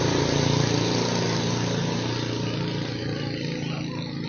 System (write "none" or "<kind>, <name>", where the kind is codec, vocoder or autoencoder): none